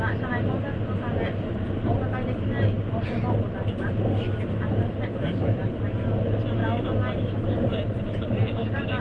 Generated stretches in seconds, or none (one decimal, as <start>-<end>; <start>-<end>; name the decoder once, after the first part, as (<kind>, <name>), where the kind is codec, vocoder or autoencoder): none